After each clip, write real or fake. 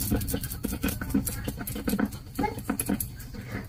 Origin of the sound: real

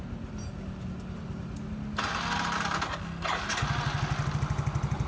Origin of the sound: real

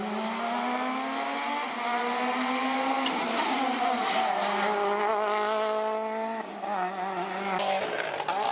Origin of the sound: real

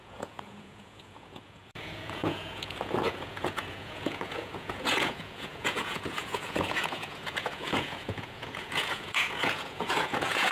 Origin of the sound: fake